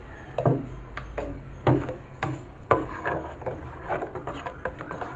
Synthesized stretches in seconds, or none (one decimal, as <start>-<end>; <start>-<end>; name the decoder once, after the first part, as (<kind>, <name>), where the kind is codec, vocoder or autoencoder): 1.3-3.9 (codec, DAC)